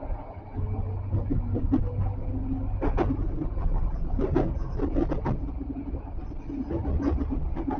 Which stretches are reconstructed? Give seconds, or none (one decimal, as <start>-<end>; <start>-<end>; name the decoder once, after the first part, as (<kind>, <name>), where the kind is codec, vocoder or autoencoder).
none